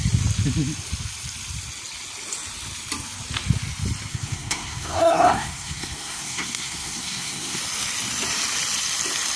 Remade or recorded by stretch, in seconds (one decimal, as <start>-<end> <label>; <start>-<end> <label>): 0.0-4.1 recorded; 4.1-7.6 remade; 7.6-9.4 recorded